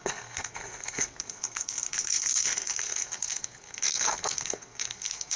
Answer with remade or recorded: remade